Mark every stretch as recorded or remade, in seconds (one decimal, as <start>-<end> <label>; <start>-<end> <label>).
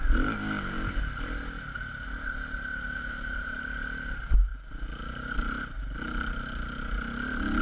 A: 0.0-7.6 recorded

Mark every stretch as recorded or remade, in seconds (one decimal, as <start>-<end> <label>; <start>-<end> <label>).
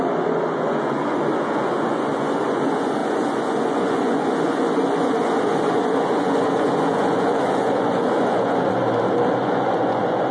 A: 0.0-8.8 remade; 8.8-9.4 recorded; 9.4-10.3 remade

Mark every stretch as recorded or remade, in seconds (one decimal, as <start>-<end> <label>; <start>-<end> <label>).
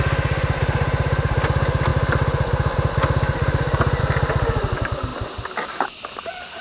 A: 0.0-6.6 recorded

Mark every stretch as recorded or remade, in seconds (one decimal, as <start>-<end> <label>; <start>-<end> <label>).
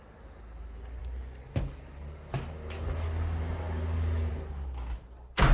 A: 0.0-5.5 recorded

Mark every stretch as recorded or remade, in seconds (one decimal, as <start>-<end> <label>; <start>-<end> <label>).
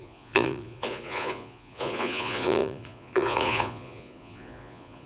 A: 0.0-5.1 remade